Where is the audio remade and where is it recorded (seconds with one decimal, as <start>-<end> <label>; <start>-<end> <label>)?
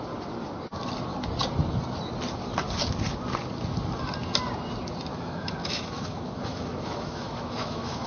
0.0-5.1 recorded; 5.1-8.1 remade